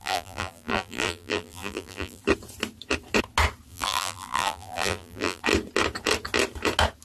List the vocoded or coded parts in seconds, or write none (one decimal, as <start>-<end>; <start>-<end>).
0.0-2.2; 3.7-5.4